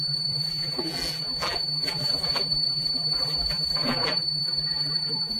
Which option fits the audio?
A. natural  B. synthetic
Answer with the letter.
B